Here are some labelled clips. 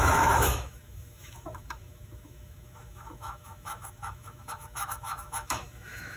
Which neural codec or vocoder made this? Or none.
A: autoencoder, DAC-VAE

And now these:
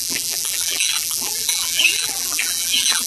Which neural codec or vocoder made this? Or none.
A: vocoder, BigVGAN v2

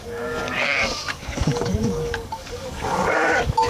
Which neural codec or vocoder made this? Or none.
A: codec, DAC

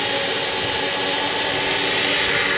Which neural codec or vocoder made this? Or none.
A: none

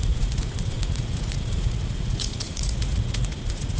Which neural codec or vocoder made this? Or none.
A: vocoder, Vocos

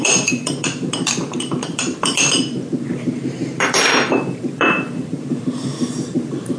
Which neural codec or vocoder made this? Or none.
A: vocoder, BigVGAN v2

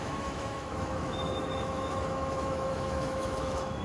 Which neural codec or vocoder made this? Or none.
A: autoencoder, DAC-VAE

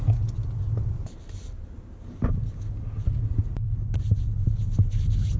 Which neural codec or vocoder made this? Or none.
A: none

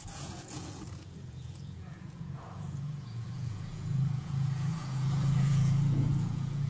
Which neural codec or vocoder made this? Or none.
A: vocoder, Vocos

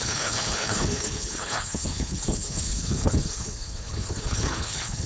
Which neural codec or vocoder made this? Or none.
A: codec, HILCodec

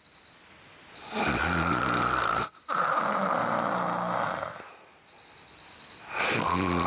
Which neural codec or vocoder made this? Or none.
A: none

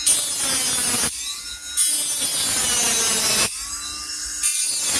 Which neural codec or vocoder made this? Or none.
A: none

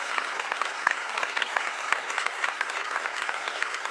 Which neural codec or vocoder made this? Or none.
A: codec, SNAC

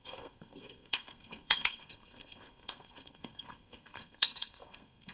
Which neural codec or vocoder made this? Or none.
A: codec, SNAC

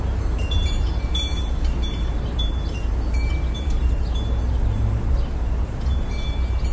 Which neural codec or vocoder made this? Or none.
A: vocoder, BigVGAN v2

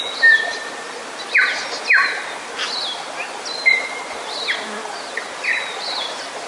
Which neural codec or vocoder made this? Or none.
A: none